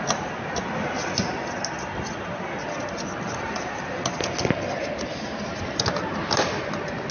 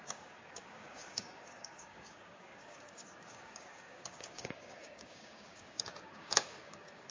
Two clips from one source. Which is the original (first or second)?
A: first